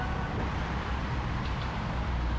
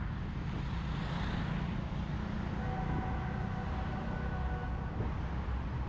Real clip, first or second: second